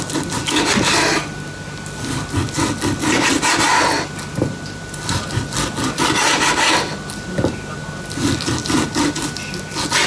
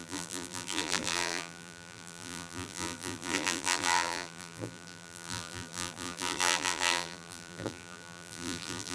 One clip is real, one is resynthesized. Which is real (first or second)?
first